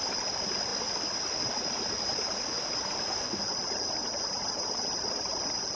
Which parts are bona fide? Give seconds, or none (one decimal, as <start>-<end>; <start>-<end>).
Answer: 0.0-5.8